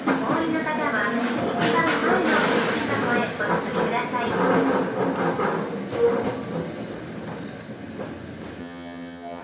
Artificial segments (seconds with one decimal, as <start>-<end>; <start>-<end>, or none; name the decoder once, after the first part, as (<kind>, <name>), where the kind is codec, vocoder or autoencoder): 8.6-9.4 (vocoder, HiFi-GAN)